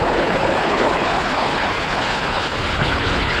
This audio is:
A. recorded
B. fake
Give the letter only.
B